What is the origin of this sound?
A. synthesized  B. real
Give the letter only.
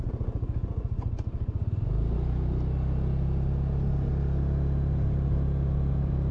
B